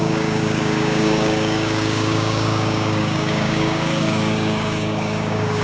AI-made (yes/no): yes